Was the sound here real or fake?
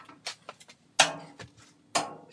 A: real